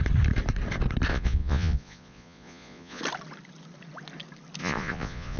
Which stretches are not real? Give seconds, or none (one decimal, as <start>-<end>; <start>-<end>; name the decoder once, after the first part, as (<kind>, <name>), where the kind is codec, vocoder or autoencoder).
1.1-3.0 (vocoder, Vocos); 4.6-5.4